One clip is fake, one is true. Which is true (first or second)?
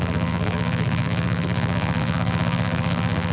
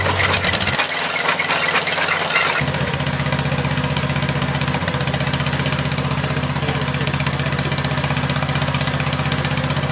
second